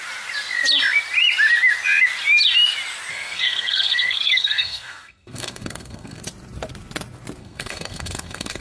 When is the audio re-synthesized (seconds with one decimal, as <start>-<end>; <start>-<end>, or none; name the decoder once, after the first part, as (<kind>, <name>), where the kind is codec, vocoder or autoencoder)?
3.1-6.2 (codec, SNAC); 7.4-8.6